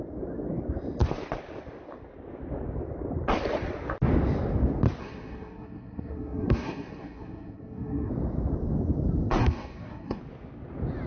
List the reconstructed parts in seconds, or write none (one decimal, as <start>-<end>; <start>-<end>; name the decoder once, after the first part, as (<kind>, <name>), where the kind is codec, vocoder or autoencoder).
5.0-8.1 (codec, SNAC); 9.4-10.2